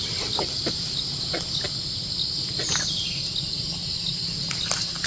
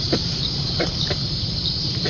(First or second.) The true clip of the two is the first